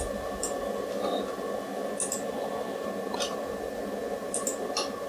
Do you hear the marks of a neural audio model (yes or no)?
no